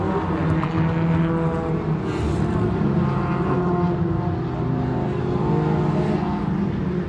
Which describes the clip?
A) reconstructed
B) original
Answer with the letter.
B